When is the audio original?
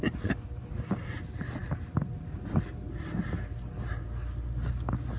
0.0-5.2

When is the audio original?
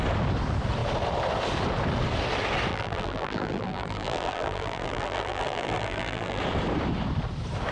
0.0-2.7; 6.4-7.7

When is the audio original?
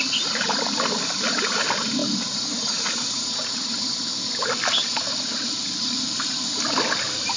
2.0-5.5